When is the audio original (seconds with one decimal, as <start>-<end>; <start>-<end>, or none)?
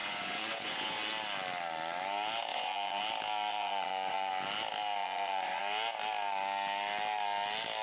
1.0-2.5; 3.0-3.5; 4.3-5.0; 5.6-7.8